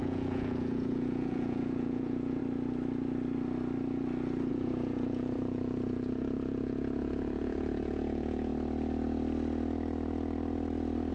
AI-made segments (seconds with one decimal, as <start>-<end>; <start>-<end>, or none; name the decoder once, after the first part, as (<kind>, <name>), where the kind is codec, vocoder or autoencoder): 0.0-2.4 (vocoder, Vocos); 4.5-8.5